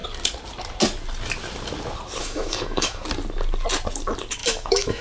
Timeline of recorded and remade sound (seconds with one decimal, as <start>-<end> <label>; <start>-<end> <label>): 0.0-2.2 recorded; 2.2-3.0 remade; 3.0-4.4 recorded; 4.4-5.0 remade